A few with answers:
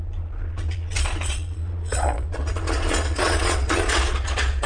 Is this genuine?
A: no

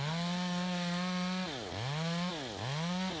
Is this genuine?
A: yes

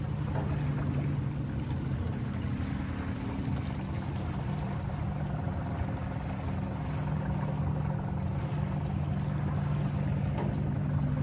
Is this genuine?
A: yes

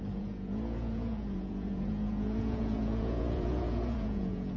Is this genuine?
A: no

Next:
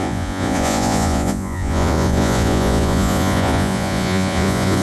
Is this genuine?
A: no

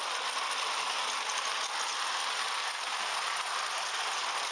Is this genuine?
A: yes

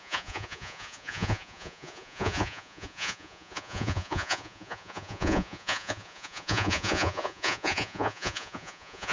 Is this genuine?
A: no